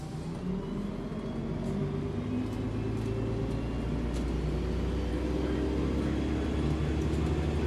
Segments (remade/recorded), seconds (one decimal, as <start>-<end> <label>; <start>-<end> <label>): 0.0-7.7 recorded